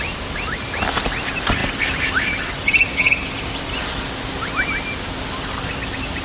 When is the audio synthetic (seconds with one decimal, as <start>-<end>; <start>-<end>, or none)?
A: none